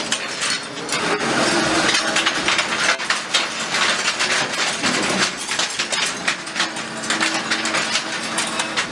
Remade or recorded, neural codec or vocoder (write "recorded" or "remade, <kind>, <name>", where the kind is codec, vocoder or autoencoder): recorded